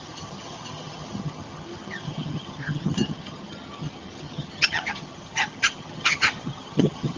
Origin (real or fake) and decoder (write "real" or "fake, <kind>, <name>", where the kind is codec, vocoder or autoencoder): fake, vocoder, HiFi-GAN